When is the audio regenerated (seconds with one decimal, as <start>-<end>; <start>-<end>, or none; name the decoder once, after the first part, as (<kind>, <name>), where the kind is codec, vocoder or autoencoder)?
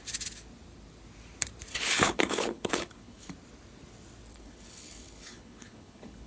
1.7-3.3 (codec, HILCodec); 4.3-6.3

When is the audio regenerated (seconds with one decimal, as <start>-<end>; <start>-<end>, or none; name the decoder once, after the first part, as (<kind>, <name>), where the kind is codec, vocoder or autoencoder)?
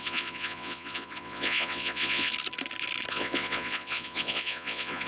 0.0-2.3 (vocoder, Vocos); 3.1-5.1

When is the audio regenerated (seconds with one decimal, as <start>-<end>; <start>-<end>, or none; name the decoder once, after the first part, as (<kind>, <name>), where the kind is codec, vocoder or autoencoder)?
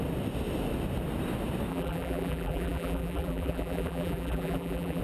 1.7-5.0 (vocoder, BigVGAN v2)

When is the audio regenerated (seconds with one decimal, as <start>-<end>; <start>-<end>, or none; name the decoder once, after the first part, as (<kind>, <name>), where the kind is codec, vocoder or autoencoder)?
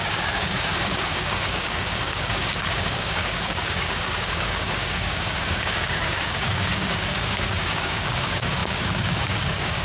0.0-9.8 (codec, DAC)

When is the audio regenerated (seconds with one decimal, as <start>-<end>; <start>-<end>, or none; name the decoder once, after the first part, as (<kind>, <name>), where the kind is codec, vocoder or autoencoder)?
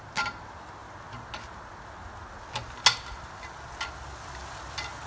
none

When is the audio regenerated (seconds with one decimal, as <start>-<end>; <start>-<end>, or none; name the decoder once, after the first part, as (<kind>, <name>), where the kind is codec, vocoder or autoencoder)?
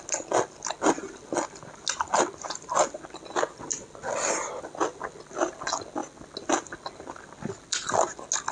none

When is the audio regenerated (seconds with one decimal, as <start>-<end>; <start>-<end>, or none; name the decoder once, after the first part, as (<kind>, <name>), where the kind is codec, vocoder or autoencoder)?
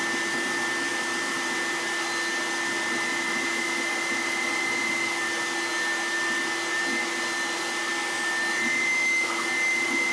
none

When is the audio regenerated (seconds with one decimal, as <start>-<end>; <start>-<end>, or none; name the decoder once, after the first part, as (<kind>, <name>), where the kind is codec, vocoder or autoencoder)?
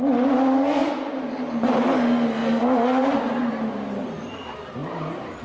0.8-1.9 (vocoder, BigVGAN v2); 2.4-3.5; 4.8-5.4